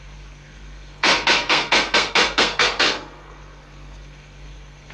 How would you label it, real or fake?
fake